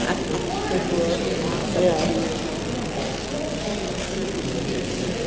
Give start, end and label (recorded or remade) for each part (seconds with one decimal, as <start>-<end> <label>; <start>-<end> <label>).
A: 0.0-5.3 recorded